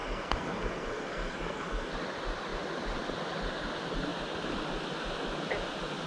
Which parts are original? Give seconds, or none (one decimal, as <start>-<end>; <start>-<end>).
1.9-6.1